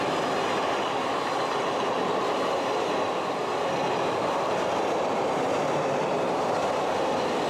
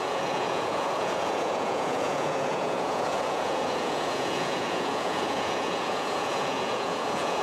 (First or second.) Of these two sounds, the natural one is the first